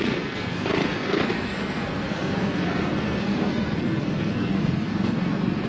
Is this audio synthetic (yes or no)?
yes